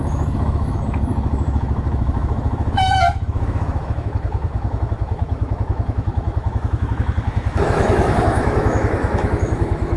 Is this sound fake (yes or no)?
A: yes